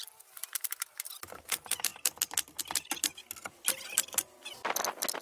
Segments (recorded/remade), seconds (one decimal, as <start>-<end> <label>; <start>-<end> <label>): 0.0-5.2 recorded